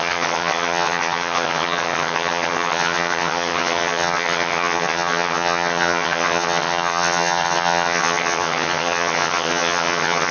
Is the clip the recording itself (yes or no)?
no